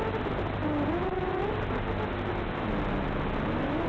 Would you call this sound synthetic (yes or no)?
no